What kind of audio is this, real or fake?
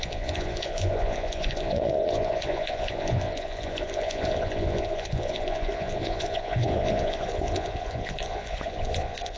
fake